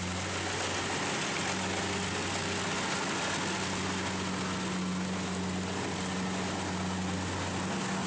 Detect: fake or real real